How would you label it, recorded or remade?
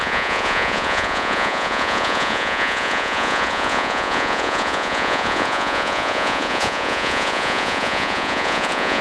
remade